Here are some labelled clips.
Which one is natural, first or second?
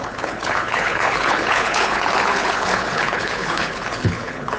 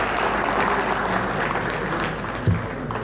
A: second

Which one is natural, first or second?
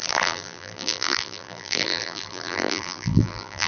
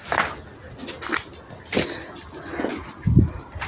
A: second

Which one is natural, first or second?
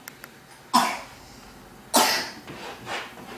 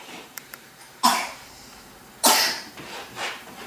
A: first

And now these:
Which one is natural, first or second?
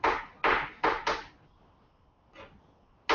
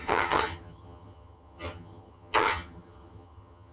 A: first